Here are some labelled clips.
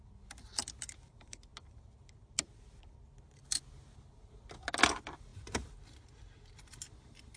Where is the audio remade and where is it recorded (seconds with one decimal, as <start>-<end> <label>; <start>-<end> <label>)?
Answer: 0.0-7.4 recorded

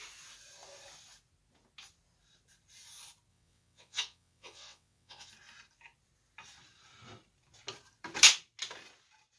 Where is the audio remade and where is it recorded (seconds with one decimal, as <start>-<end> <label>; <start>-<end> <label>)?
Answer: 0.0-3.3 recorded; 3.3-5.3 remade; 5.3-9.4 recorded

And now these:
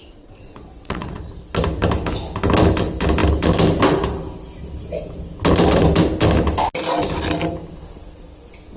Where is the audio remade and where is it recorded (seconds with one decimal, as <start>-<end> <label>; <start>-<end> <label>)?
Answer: 0.0-1.2 remade; 1.2-8.8 recorded